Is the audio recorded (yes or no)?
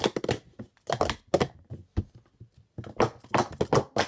yes